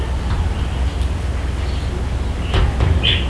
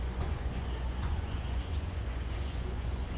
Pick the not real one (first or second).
second